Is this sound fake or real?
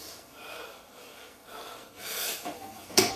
fake